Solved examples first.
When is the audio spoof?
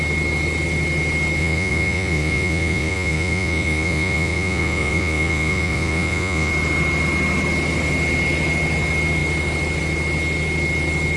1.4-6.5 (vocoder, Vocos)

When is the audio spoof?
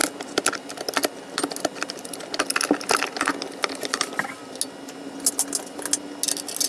none